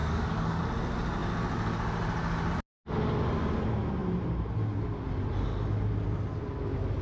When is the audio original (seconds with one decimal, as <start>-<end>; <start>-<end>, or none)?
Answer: 0.6-7.0